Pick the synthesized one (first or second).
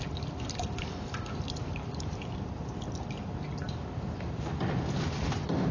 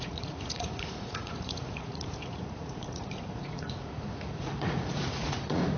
second